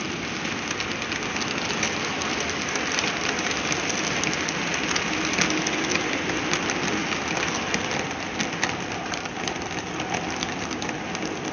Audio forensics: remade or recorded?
recorded